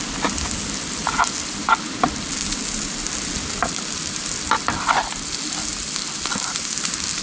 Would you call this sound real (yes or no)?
yes